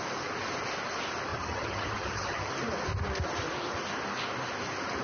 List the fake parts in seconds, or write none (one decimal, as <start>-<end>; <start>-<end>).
1.3-2.5